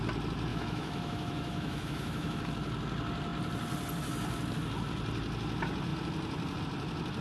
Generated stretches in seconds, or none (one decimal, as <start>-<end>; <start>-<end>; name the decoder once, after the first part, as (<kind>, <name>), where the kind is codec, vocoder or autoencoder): 0.5-2.4 (autoencoder, DAC-VAE)